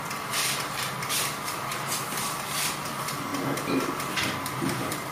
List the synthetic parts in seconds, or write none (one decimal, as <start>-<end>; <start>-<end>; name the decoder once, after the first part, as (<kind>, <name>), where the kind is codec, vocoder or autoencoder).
0.0-0.4 (vocoder, BigVGAN v2); 1.0-1.7; 2.2-3.3; 3.9-5.1